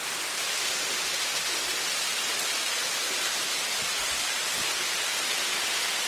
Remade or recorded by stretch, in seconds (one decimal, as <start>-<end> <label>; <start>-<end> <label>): 0.0-6.1 recorded